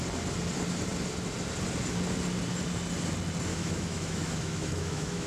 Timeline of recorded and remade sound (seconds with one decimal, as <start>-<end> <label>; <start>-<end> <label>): 0.0-3.5 recorded; 3.5-5.3 remade